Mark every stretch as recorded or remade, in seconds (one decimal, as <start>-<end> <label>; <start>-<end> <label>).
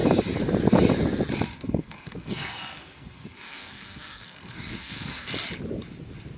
0.0-1.5 recorded; 1.5-5.3 remade; 5.3-6.4 recorded